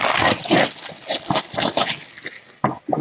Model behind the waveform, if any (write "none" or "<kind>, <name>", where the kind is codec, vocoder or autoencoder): none